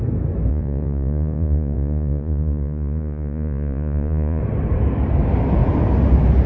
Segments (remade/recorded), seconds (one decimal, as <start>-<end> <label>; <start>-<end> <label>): 0.0-0.5 recorded; 0.5-4.4 remade; 4.4-6.5 recorded